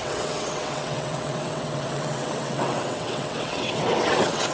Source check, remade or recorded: remade